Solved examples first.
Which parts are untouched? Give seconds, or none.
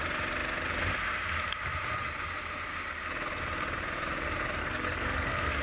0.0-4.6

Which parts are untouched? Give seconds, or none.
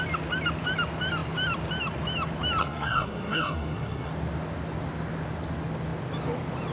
0.0-2.6; 4.1-6.7